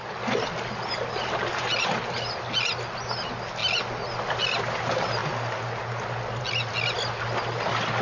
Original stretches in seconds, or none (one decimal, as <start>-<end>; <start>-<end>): 0.0-8.0